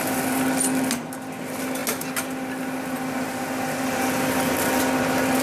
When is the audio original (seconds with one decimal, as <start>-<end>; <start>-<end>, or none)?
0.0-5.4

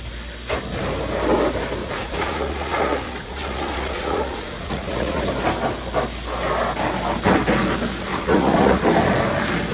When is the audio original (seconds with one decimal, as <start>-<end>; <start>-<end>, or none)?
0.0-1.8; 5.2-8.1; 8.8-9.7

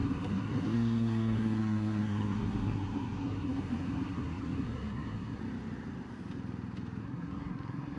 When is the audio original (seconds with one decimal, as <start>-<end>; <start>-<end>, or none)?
5.4-7.0

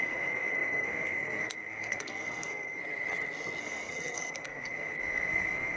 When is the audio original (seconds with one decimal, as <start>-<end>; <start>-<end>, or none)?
2.8-3.6